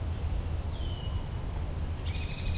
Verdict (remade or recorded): recorded